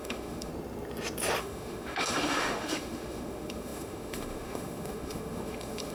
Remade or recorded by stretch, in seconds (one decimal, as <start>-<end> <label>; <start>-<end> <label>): 0.0-0.5 remade; 0.5-1.4 recorded; 1.4-5.9 remade